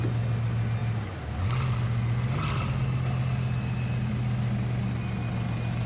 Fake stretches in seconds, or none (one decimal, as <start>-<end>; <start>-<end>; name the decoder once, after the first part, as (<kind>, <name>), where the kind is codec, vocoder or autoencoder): none